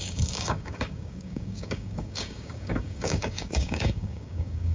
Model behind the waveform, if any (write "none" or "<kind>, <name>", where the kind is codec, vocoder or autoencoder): codec, DAC